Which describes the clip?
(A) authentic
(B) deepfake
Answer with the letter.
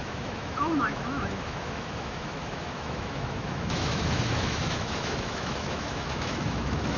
B